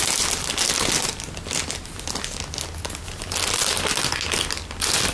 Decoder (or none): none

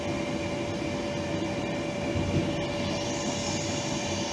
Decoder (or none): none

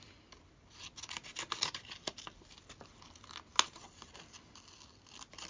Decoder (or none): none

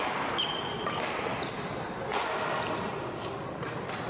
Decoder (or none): none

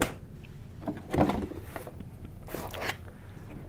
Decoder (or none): none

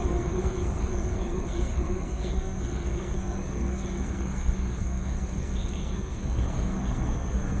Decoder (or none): codec, SNAC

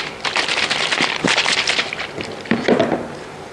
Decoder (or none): vocoder, BigVGAN v2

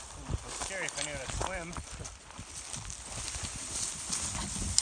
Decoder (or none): none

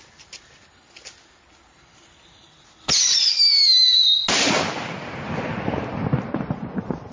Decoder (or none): none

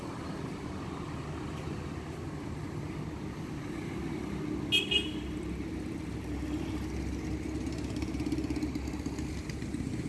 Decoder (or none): none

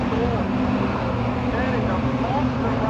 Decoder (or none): none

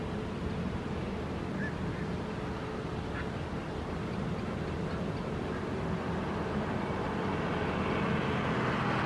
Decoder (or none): none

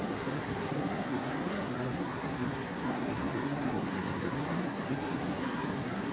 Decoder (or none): codec, SNAC